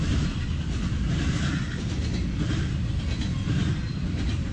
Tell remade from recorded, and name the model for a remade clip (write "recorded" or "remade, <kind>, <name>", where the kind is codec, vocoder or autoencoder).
recorded